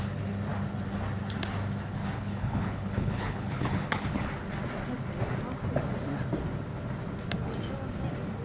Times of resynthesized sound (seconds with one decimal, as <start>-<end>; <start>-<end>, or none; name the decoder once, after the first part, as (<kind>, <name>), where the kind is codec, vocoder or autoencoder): 2.0-4.3 (codec, HILCodec)